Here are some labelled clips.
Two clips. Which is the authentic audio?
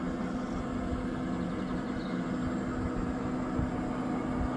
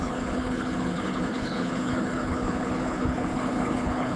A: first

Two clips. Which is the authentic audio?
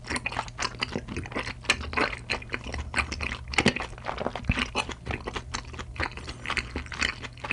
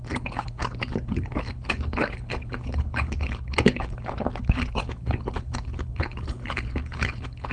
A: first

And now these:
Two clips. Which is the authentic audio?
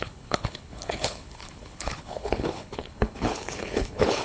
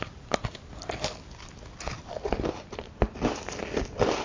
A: second